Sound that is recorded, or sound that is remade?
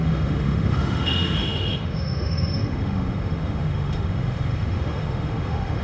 remade